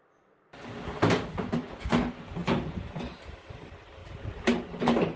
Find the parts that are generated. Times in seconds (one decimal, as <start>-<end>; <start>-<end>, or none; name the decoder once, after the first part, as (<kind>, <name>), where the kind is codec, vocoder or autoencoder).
none